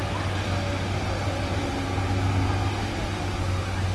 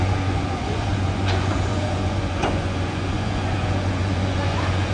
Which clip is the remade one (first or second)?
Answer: second